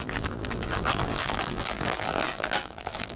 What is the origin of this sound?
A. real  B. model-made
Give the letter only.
B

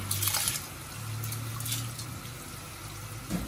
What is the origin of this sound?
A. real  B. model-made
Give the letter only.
A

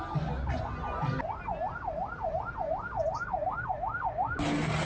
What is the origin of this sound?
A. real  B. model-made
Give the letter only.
A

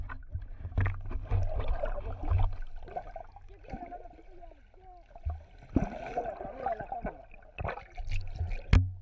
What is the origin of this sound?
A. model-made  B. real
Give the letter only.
B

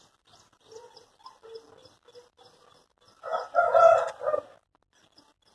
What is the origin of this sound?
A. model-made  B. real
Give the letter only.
B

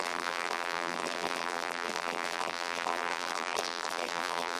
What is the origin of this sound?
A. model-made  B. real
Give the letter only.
A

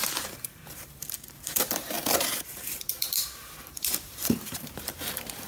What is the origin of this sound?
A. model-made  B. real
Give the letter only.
A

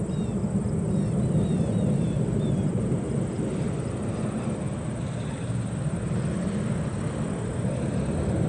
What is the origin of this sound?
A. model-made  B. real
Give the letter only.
B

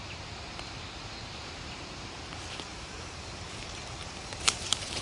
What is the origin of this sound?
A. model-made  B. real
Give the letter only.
A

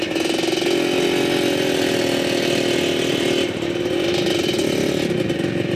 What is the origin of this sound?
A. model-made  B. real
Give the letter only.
B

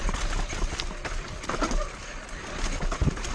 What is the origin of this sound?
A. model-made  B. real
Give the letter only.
B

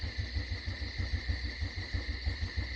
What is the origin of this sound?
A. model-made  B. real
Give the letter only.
A